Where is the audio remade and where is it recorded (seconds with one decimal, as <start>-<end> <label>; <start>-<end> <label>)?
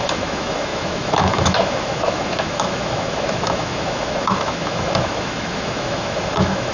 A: 0.0-6.7 remade